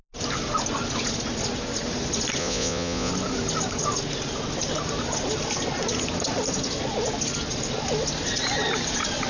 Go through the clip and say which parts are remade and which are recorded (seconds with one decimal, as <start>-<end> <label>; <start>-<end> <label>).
0.0-2.4 recorded; 2.4-3.1 remade; 3.1-9.3 recorded